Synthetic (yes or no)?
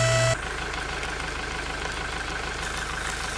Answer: no